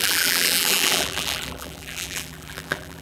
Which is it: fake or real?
fake